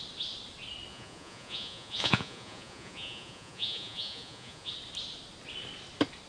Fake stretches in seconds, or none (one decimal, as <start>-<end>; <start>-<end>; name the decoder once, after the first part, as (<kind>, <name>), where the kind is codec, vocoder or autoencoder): 0.9-4.7 (vocoder, Vocos)